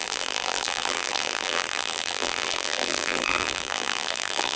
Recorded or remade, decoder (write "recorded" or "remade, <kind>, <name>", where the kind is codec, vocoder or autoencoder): remade, vocoder, BigVGAN v2